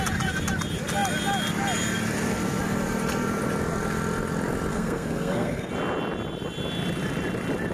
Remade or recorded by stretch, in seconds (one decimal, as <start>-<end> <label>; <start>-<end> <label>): 0.0-4.7 recorded; 4.7-5.7 remade; 5.7-7.7 recorded